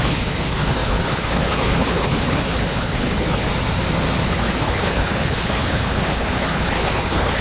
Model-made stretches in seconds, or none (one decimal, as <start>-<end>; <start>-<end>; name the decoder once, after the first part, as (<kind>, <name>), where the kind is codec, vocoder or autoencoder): 0.0-3.5 (codec, HILCodec); 4.2-7.4